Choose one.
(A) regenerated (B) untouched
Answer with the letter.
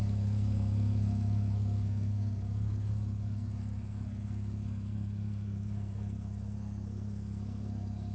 A